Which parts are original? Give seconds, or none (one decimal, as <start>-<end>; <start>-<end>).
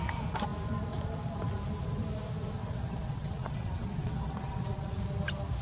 0.0-2.6; 5.0-5.6